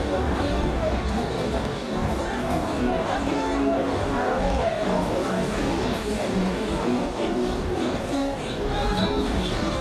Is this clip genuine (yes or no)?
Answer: no